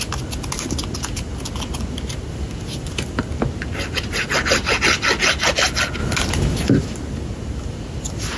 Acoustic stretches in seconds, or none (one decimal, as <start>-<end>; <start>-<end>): 0.0-8.4